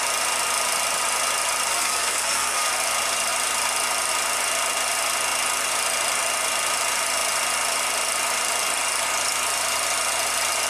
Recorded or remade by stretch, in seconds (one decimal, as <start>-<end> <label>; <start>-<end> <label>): 0.0-1.7 recorded; 1.7-2.7 remade; 2.7-10.7 recorded